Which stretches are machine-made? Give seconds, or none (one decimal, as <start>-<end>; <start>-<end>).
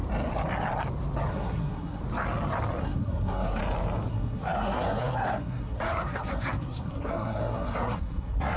1.3-2.0; 2.8-3.6; 4.1-8.6